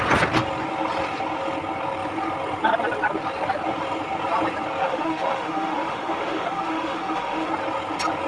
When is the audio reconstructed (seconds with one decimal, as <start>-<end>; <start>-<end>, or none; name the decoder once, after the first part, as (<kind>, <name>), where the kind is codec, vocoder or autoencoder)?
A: 4.8-7.5 (autoencoder, DAC-VAE)